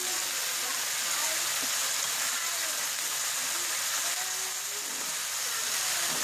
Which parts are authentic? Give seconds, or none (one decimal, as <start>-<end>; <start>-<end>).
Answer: 0.0-6.2